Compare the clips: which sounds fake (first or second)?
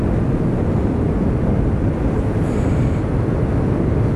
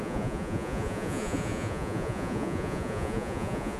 second